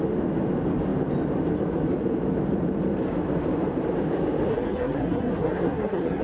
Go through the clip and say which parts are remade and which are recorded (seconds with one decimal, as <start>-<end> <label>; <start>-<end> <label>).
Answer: 0.0-4.5 recorded; 4.5-6.2 remade